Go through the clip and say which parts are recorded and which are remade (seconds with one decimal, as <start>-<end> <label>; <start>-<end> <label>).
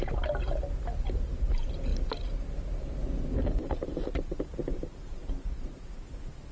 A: 0.0-6.5 recorded